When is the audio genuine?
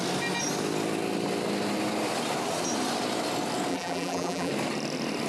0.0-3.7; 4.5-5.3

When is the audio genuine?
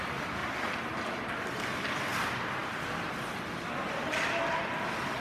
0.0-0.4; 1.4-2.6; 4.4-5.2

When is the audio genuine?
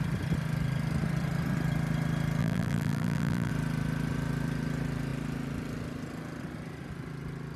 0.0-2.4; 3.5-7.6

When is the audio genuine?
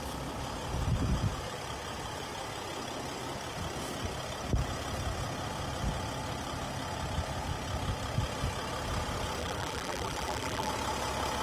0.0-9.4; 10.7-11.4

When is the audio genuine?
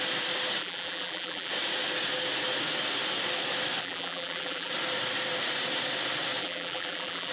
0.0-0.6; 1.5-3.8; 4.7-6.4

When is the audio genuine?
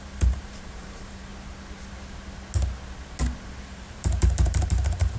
1.3-3.7